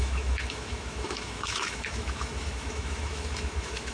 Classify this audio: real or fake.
fake